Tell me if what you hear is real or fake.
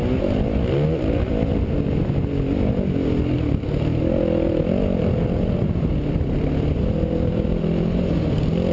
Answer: real